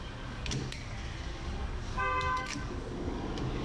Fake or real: fake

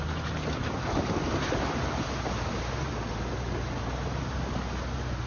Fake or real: real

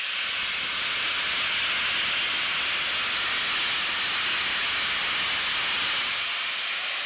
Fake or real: real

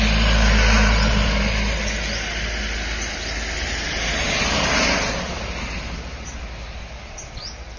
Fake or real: real